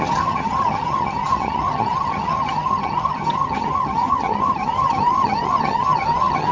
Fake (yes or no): yes